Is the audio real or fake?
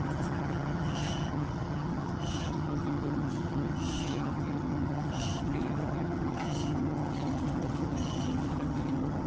fake